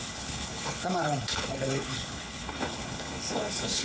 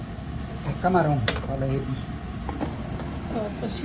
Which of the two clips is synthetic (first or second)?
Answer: first